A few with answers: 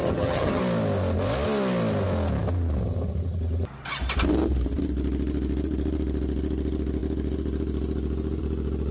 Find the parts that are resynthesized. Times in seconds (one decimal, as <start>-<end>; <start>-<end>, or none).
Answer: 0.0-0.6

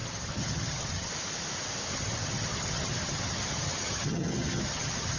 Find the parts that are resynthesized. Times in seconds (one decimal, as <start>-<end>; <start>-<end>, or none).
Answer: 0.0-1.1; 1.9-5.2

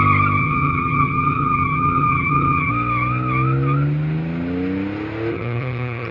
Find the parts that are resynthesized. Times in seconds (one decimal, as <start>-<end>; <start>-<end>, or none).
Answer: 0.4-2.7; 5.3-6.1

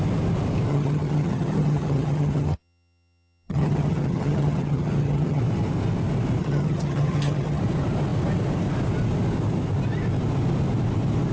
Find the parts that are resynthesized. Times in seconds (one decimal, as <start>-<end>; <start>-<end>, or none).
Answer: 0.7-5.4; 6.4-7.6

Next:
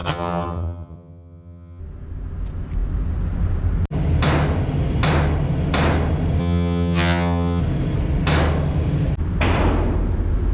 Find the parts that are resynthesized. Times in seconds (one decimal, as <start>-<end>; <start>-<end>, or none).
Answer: 0.0-1.8; 6.4-7.6

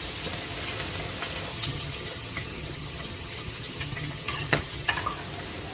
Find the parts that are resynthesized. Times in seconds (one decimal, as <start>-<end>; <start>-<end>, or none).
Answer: 1.5-4.9

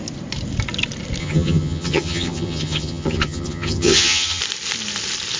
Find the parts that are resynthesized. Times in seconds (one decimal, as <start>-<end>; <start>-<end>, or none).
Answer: 1.2-4.4